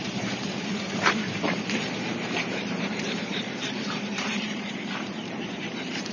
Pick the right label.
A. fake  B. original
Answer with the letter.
A